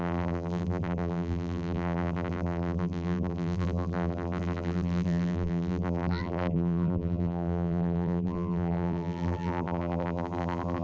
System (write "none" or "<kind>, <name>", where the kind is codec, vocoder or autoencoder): vocoder, BigVGAN v2